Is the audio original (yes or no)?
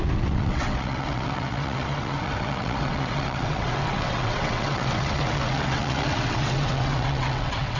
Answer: no